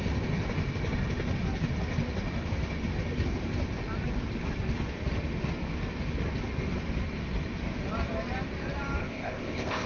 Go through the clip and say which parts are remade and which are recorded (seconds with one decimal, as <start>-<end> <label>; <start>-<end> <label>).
0.0-9.0 recorded; 9.0-9.9 remade